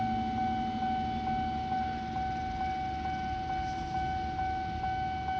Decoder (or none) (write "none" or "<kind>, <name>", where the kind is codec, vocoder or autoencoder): none